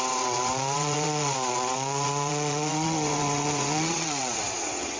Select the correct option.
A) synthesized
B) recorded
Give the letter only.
A